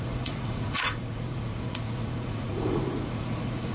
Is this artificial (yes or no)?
yes